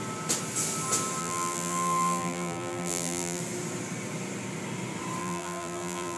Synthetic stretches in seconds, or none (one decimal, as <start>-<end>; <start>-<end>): 1.2-3.4; 5.2-6.2